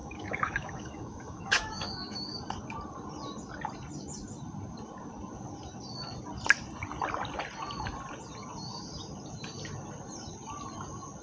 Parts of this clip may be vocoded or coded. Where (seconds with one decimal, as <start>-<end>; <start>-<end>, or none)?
0.0-2.4